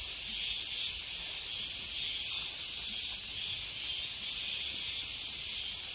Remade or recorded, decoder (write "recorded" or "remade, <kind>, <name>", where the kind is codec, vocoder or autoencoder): recorded